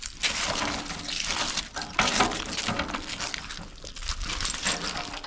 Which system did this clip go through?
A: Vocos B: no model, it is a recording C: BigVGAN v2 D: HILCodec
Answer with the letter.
B